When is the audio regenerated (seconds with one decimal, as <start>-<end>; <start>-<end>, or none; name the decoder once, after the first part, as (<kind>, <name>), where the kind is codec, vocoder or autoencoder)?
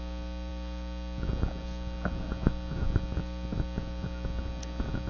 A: none